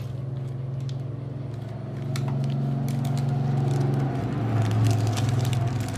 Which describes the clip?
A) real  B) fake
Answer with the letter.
A